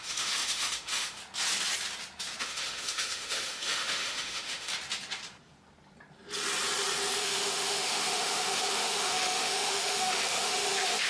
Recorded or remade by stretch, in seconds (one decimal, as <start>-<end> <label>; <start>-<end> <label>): 0.0-1.2 remade; 1.2-2.4 recorded; 2.4-4.7 remade; 4.7-7.2 recorded; 7.2-11.1 remade